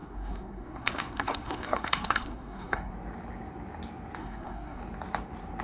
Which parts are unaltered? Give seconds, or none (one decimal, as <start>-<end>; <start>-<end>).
2.9-4.2; 4.8-5.6